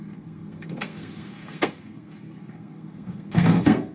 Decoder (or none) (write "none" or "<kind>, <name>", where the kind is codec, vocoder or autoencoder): codec, SNAC